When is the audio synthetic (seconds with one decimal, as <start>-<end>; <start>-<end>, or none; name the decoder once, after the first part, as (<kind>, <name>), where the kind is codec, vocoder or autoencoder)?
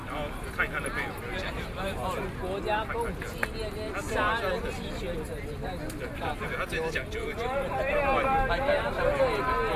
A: none